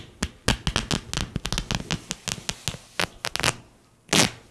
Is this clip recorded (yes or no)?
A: yes